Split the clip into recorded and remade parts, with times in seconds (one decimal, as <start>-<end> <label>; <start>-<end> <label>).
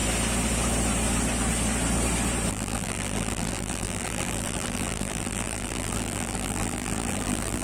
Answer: 0.0-2.5 recorded; 2.5-7.6 remade